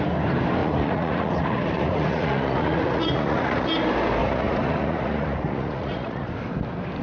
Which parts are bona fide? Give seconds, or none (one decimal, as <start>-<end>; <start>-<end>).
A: 0.0-0.6; 3.7-4.2; 6.3-7.0